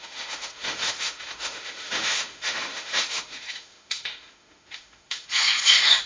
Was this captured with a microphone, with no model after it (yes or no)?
no